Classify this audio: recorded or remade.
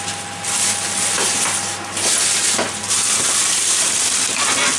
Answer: remade